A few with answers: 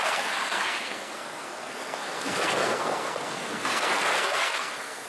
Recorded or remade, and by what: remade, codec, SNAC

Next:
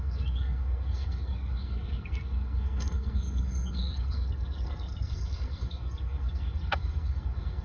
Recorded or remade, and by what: remade, codec, SNAC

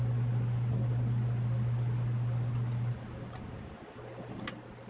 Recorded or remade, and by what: recorded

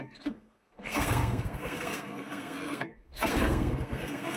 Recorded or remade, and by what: remade, codec, SNAC